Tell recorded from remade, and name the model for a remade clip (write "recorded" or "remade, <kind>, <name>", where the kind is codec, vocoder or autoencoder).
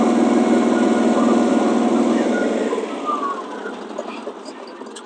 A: recorded